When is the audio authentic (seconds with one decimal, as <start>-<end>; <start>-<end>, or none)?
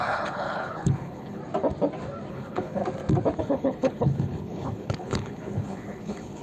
1.4-2.3; 2.8-3.4